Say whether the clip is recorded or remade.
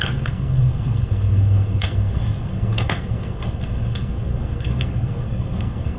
remade